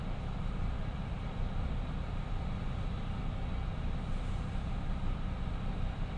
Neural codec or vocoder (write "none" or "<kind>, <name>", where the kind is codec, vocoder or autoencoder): none